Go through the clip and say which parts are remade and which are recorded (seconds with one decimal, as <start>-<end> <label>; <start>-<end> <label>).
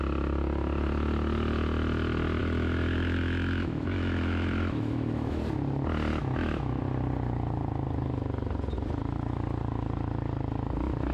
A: 0.0-2.4 recorded; 2.4-5.4 remade; 5.4-6.1 recorded; 6.1-6.8 remade; 6.8-11.1 recorded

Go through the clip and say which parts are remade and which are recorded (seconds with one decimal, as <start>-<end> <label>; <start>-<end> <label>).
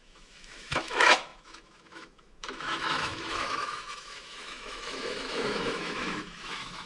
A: 0.0-6.9 remade